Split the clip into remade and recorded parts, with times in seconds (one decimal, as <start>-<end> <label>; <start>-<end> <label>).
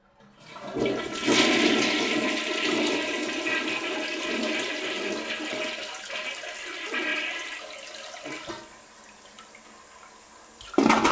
0.0-11.1 recorded